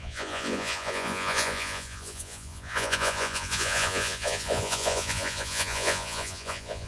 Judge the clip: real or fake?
fake